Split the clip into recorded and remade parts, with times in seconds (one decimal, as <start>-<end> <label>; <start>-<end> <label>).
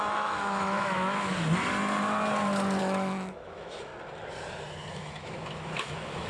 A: 0.0-1.3 remade; 1.3-2.8 recorded; 2.8-3.9 remade; 3.9-4.9 recorded; 4.9-6.3 remade